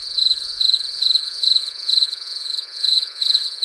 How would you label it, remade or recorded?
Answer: remade